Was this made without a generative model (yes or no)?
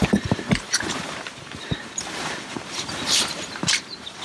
no